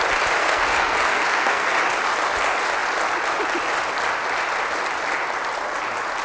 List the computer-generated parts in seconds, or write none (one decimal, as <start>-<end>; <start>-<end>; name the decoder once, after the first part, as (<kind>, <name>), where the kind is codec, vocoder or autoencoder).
0.4-1.8 (codec, SNAC)